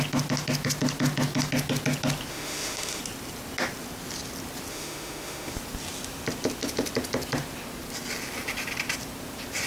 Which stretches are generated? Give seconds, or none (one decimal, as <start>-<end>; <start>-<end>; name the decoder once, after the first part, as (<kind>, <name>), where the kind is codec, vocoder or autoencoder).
2.3-3.0 (autoencoder, DAC-VAE); 4.7-5.5